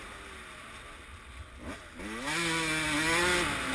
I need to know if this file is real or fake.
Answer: real